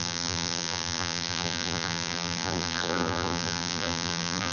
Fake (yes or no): yes